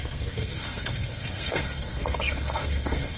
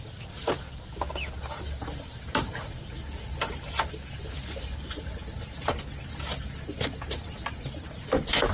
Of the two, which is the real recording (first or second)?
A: second